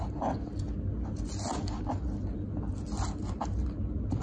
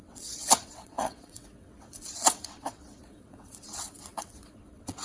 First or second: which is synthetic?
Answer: second